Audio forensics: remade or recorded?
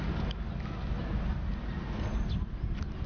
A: recorded